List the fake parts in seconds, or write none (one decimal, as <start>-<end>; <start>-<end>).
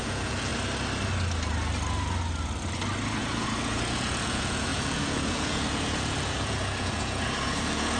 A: 0.0-0.5; 3.2-8.0